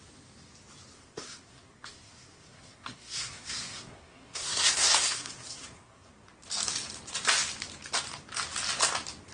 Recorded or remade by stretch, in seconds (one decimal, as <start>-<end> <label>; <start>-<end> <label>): 0.0-0.9 recorded; 0.9-6.1 remade; 6.1-9.3 recorded